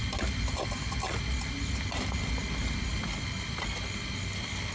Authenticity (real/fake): real